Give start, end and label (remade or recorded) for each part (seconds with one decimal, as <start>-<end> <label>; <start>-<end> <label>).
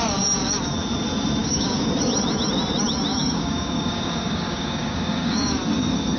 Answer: 0.0-1.4 recorded; 1.4-1.9 remade; 1.9-3.1 recorded; 3.1-5.6 remade; 5.6-6.2 recorded